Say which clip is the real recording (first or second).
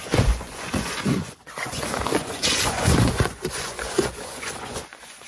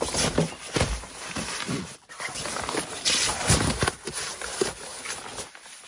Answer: second